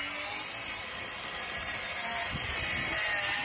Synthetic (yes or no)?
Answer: no